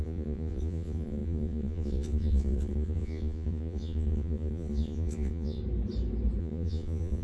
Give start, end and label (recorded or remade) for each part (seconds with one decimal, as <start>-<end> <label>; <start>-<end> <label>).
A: 0.0-5.6 remade; 5.6-6.4 recorded; 6.4-7.2 remade